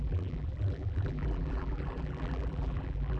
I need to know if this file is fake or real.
fake